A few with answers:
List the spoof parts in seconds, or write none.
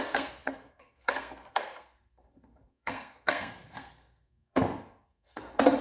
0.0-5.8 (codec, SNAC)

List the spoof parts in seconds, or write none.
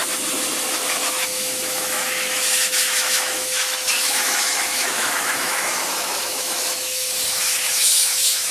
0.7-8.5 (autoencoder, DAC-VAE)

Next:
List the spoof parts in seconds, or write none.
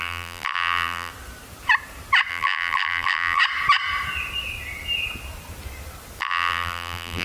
0.0-1.1 (vocoder, BigVGAN v2); 2.3-3.4; 6.2-7.2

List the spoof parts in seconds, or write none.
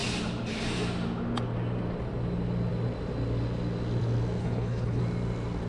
4.4-5.0 (codec, HILCodec)